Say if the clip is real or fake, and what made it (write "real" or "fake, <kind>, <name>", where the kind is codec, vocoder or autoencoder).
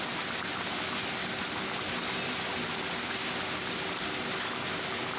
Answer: real